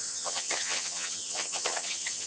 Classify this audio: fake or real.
fake